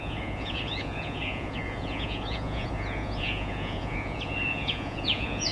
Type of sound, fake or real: fake